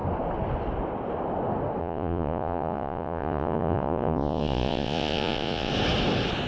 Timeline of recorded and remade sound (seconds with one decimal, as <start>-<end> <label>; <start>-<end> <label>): 0.0-1.8 recorded; 1.8-5.7 remade; 5.7-6.5 recorded